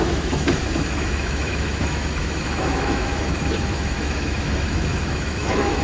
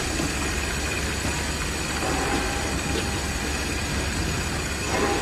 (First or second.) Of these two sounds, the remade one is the first